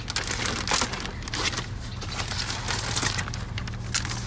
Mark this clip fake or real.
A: real